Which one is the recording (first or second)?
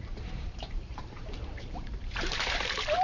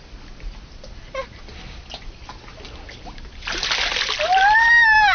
second